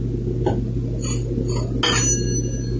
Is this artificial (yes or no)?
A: no